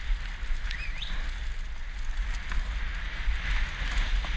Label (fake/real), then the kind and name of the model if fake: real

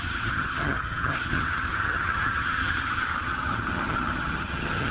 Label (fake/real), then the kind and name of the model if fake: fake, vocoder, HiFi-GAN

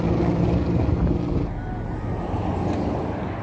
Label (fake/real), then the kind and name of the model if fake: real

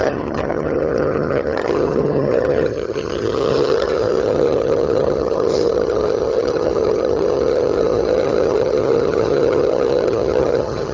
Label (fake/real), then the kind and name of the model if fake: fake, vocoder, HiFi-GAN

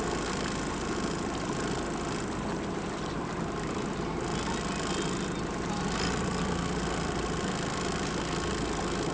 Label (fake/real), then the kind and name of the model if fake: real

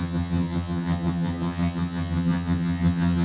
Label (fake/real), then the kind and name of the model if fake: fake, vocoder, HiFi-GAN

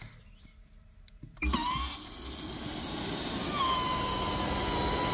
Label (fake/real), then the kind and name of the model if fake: real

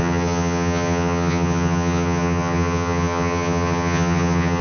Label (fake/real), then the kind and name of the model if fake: fake, vocoder, HiFi-GAN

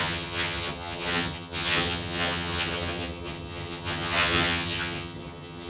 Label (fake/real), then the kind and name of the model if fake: fake, vocoder, HiFi-GAN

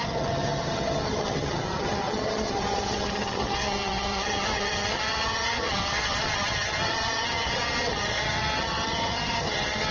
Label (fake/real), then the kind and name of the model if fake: fake, vocoder, HiFi-GAN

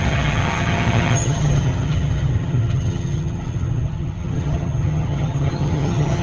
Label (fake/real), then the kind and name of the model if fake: fake, vocoder, HiFi-GAN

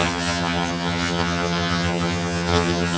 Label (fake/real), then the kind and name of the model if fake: fake, vocoder, HiFi-GAN